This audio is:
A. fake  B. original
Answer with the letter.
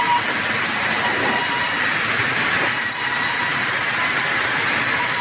B